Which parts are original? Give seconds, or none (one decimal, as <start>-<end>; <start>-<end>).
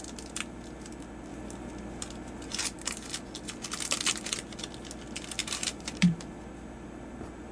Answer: 0.0-5.4; 6.2-7.5